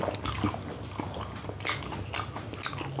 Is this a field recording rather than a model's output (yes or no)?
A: yes